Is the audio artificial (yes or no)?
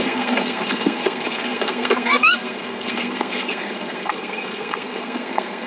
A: yes